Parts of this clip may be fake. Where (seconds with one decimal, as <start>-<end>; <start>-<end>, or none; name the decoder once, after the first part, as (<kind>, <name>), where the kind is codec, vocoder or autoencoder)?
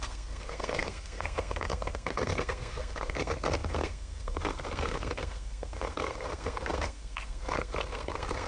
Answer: 0.0-8.5 (codec, SNAC)